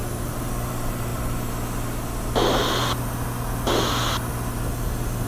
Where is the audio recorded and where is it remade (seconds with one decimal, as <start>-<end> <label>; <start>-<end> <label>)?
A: 0.0-5.3 recorded